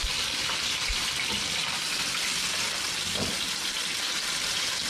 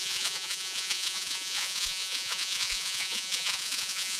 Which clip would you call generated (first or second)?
second